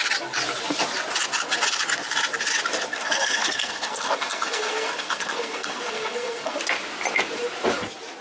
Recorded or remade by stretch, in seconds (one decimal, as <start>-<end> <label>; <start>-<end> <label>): 0.0-2.9 recorded; 2.9-6.6 remade; 6.6-8.2 recorded